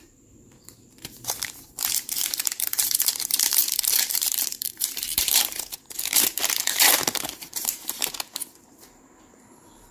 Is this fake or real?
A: fake